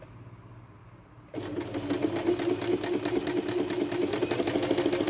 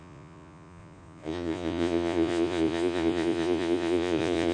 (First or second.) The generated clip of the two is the second